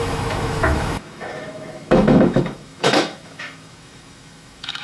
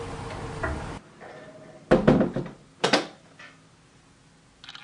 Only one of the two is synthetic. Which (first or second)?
first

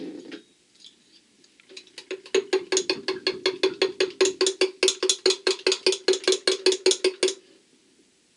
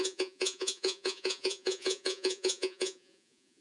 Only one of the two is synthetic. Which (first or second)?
second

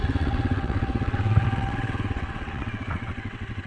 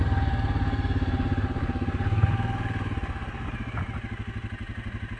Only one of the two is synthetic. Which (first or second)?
first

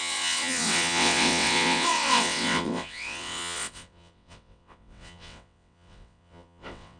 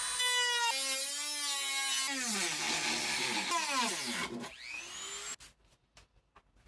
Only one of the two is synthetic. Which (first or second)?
first